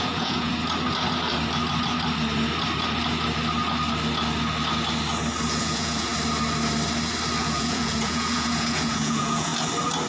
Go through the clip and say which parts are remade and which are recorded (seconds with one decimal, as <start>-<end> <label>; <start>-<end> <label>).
0.0-0.5 remade; 0.5-5.6 recorded; 5.6-6.1 remade; 6.1-7.4 recorded; 7.4-9.5 remade; 9.5-10.1 recorded